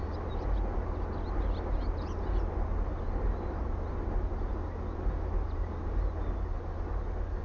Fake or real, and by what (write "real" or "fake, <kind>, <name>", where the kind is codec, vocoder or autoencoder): real